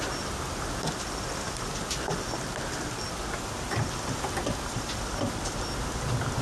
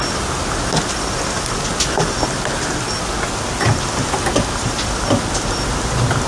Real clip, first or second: second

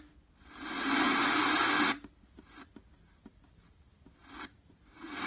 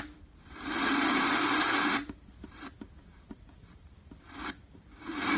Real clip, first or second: first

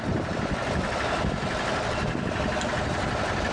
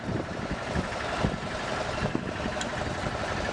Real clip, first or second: first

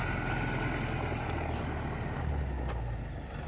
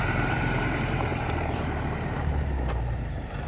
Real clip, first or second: first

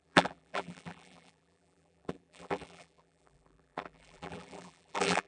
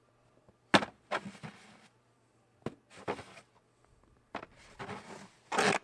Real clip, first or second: second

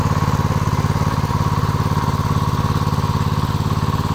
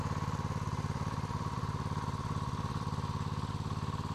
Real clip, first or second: first